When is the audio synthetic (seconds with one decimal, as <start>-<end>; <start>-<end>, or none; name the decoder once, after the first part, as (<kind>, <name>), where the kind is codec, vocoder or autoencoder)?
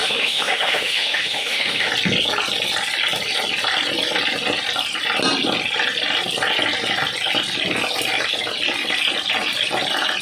0.0-1.9 (autoencoder, DAC-VAE)